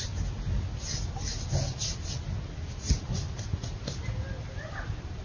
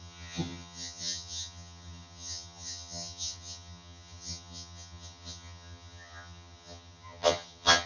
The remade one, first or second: second